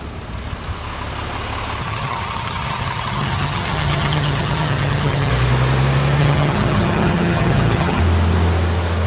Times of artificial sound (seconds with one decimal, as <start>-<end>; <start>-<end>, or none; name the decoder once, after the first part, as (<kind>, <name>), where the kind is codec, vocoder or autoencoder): 1.8-5.3 (vocoder, HiFi-GAN); 6.2-8.0